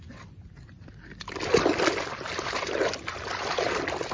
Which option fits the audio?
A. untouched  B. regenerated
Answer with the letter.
A